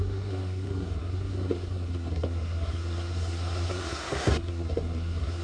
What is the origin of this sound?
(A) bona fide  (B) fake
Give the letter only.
B